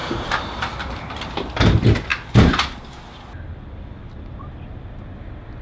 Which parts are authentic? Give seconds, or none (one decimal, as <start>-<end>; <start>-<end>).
1.2-2.1; 4.0-5.6